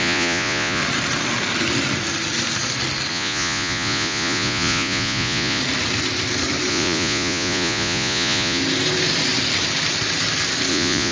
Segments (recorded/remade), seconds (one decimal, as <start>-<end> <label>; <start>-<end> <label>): 0.0-0.8 remade; 0.8-3.1 recorded; 3.1-5.6 remade; 5.6-6.7 recorded; 6.7-8.6 remade; 8.6-10.7 recorded; 10.7-11.1 remade